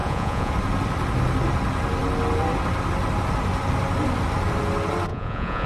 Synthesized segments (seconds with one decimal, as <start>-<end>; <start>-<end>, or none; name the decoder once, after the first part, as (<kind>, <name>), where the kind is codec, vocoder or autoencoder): 0.0-0.5 (vocoder, Vocos); 5.1-5.7